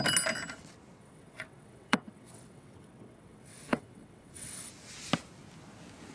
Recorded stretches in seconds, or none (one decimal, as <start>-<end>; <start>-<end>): 0.0-1.0; 4.7-6.1